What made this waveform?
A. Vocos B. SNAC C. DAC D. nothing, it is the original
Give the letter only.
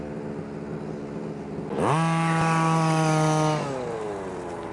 D